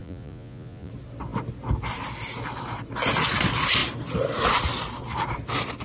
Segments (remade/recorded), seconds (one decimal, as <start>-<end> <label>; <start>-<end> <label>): 0.0-0.9 remade; 0.9-5.8 recorded